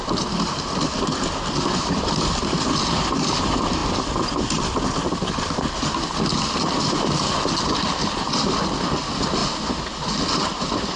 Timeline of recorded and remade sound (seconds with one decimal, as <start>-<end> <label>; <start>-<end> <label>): 0.0-11.0 recorded